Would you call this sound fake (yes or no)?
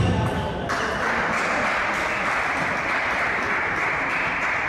no